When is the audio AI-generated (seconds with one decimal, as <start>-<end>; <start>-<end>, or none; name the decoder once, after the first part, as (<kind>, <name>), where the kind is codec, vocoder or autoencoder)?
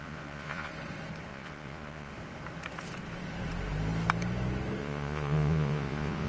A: 0.0-0.7 (vocoder, Vocos); 1.3-2.1; 4.8-6.3